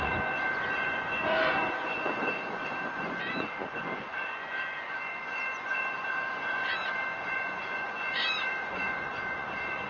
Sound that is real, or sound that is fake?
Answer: fake